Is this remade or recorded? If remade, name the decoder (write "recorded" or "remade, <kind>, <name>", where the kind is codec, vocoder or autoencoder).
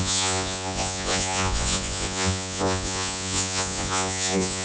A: remade, vocoder, Vocos